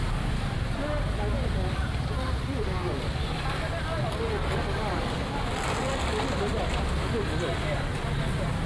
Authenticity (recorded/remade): recorded